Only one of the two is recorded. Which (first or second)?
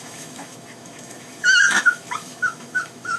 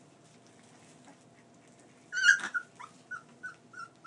second